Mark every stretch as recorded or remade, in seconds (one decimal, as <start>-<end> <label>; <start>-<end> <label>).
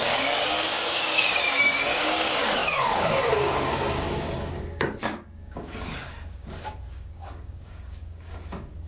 0.0-8.9 remade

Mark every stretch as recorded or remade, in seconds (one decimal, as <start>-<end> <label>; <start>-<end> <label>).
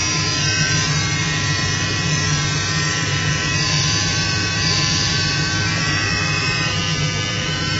0.0-6.8 remade; 6.8-7.3 recorded; 7.3-7.8 remade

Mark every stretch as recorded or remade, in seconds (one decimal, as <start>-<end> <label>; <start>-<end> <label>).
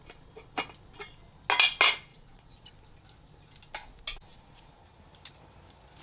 0.0-2.1 recorded; 2.1-2.7 remade; 2.7-4.3 recorded; 4.3-5.0 remade; 5.0-6.0 recorded